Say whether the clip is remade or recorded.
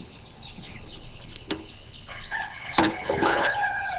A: remade